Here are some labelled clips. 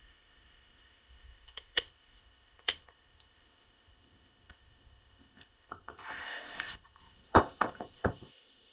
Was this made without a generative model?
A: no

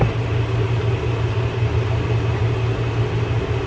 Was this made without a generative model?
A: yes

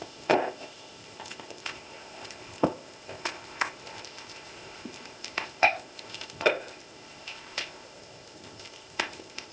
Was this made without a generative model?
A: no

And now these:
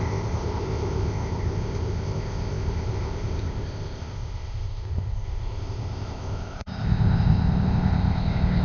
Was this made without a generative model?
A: no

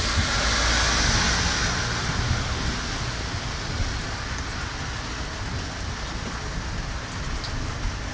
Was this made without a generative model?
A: yes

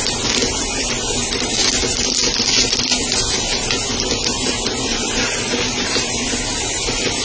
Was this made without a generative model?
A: yes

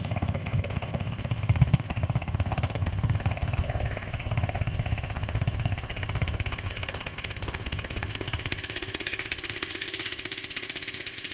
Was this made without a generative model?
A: no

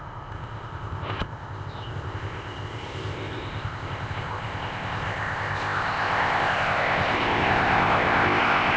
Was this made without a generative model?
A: no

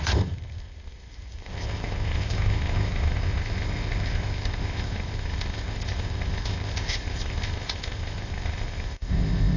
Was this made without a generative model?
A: no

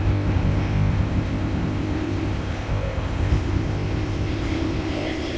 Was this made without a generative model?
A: no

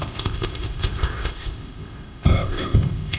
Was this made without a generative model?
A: no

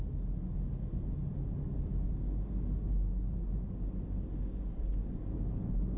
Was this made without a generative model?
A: yes